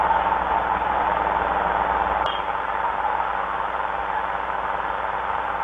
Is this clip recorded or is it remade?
recorded